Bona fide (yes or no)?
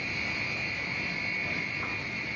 yes